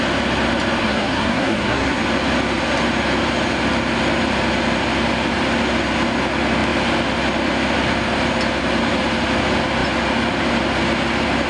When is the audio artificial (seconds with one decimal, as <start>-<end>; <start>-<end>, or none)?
0.8-2.0